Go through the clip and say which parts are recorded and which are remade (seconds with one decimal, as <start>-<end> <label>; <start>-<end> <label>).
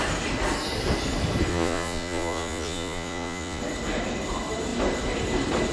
0.0-1.5 recorded; 1.5-3.6 remade; 3.6-5.7 recorded